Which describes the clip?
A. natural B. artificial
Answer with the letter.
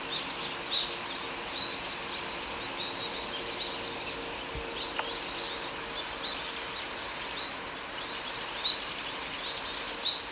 A